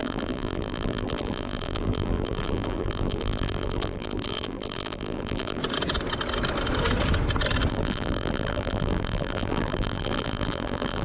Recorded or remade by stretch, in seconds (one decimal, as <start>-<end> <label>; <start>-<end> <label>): 0.0-5.6 remade; 5.6-7.7 recorded; 7.7-11.0 remade